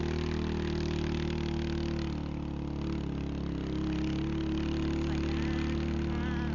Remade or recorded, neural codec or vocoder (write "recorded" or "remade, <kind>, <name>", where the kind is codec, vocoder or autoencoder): recorded